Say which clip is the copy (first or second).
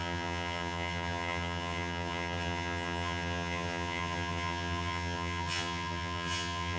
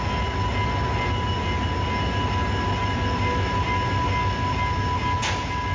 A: first